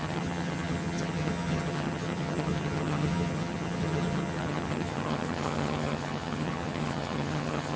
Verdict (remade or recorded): remade